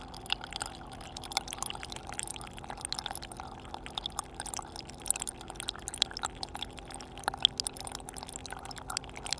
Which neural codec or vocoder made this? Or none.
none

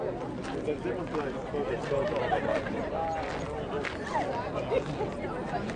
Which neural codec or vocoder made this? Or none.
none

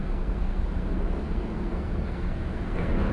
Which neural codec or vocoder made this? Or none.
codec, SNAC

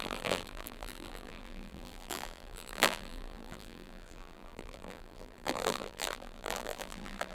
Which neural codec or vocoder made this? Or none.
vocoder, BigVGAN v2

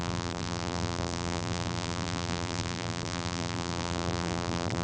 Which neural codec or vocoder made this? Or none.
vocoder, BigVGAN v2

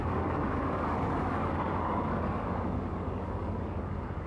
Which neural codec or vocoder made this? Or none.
codec, DAC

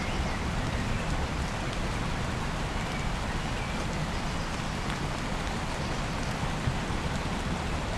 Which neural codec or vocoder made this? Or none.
none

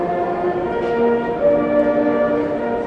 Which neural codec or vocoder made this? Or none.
none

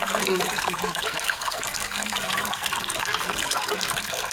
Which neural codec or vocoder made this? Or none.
codec, SNAC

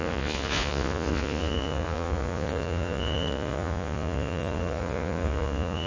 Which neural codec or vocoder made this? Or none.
vocoder, Vocos